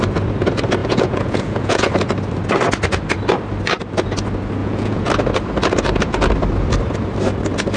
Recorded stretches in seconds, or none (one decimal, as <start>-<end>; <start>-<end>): 0.0-0.8; 1.9-4.6; 5.1-7.8